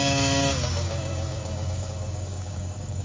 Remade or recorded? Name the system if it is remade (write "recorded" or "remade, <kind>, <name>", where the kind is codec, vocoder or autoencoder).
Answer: remade, codec, DAC